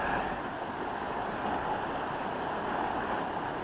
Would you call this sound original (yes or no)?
yes